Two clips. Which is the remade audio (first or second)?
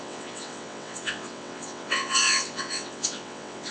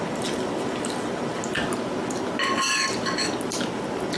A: first